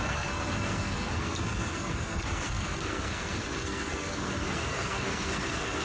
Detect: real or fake fake